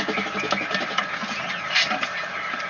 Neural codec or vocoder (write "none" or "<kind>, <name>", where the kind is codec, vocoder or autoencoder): none